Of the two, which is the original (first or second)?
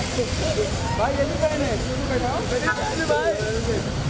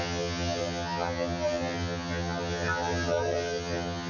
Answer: first